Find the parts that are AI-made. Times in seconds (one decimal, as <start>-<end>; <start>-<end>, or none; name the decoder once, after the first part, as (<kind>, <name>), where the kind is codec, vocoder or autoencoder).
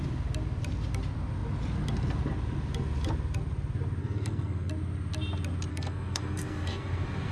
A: 4.0-4.7 (codec, SNAC); 5.7-7.3